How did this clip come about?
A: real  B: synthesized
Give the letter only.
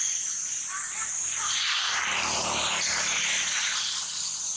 A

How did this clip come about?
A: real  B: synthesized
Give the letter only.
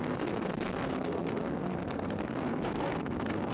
B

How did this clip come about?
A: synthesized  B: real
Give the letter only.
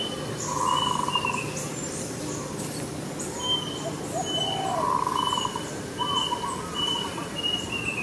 B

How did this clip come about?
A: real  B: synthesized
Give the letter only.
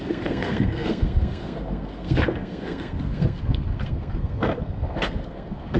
B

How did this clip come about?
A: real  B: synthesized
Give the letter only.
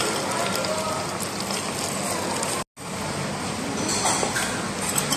A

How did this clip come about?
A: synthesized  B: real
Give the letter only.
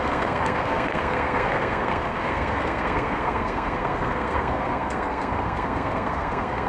A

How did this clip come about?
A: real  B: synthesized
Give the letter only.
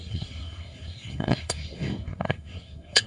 B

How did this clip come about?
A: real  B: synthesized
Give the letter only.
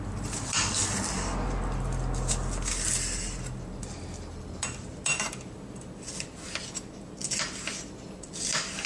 A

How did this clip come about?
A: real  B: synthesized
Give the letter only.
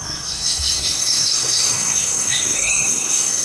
B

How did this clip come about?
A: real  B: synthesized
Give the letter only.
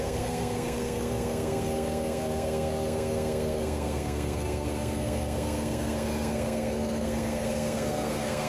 B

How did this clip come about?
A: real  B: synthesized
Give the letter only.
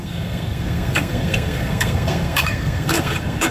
B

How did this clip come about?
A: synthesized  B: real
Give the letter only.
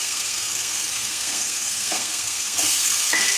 A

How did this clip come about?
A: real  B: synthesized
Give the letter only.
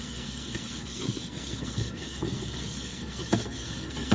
B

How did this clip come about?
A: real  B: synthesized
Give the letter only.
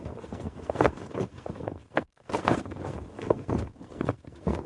B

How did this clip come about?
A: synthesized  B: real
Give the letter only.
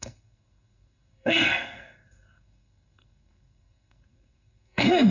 A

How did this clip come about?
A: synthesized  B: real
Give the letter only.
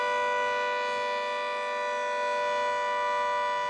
B